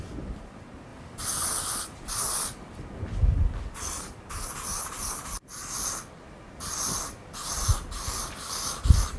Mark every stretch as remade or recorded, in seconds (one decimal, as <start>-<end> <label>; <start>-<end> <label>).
0.0-0.9 recorded; 0.9-2.2 remade; 2.2-4.7 recorded; 4.7-9.2 remade

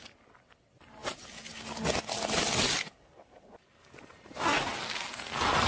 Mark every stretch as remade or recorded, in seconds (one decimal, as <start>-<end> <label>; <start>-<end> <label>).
0.0-5.7 recorded

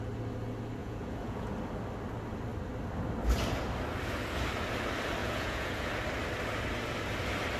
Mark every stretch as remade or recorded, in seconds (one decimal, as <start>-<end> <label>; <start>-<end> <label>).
0.0-0.8 recorded; 0.8-1.5 remade; 1.5-5.2 recorded; 5.2-5.9 remade; 5.9-7.6 recorded

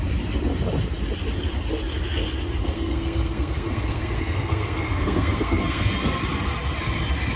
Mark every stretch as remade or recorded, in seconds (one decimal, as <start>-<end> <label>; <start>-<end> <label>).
0.0-2.6 recorded; 2.6-6.2 remade; 6.2-7.4 recorded

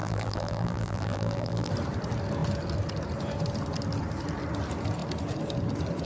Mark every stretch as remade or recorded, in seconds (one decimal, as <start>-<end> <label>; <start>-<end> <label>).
0.0-1.7 remade; 1.7-6.0 recorded

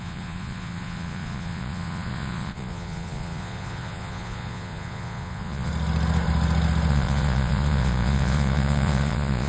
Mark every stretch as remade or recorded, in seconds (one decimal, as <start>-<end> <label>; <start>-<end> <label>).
0.0-5.7 remade; 5.7-6.9 recorded; 6.9-9.5 remade

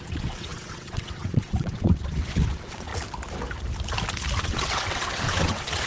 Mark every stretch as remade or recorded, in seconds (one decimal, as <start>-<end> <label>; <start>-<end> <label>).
0.0-2.9 remade; 2.9-4.4 recorded; 4.4-5.9 remade